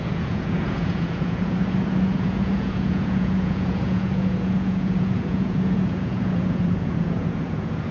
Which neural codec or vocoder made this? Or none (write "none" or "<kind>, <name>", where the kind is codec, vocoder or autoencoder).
vocoder, Vocos